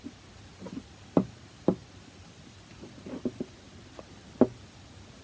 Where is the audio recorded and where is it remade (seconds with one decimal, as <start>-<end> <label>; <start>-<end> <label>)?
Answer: 0.0-5.2 recorded